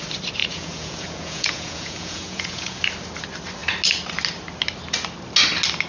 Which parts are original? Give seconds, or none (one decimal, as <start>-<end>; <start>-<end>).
0.0-0.4; 2.8-5.9